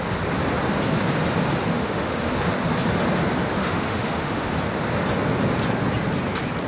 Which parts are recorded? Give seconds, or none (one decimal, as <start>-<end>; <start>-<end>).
0.0-1.7; 2.4-3.6; 4.5-6.7